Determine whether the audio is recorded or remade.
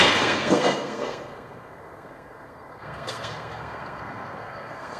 remade